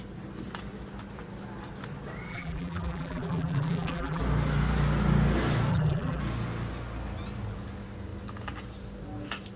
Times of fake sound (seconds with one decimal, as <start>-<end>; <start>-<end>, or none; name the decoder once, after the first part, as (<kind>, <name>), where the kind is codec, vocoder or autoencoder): 2.3-4.2 (vocoder, BigVGAN v2); 5.7-6.2